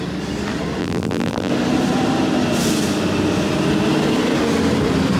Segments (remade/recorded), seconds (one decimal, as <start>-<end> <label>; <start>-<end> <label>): 0.0-0.8 recorded; 0.8-1.5 remade; 1.5-5.2 recorded